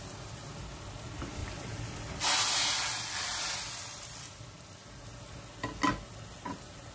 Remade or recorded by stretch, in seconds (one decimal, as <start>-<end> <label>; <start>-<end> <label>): 0.0-6.9 recorded

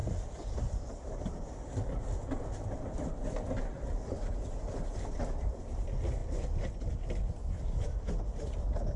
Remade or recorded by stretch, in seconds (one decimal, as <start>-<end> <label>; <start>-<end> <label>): 0.0-7.4 recorded; 7.4-8.1 remade; 8.1-9.0 recorded